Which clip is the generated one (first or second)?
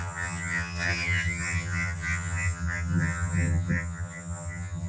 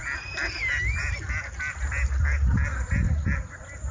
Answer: first